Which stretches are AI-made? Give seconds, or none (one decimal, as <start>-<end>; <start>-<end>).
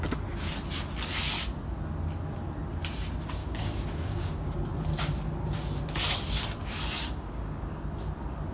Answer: 3.4-4.5; 7.0-7.8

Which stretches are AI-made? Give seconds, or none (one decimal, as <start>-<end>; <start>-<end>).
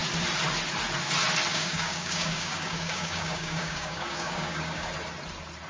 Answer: 1.5-4.9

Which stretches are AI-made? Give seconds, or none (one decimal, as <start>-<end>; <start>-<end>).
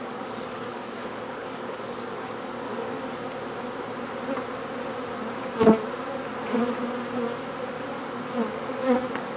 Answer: 0.0-3.0; 8.0-9.4